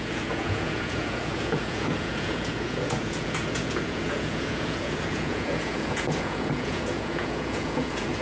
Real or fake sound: fake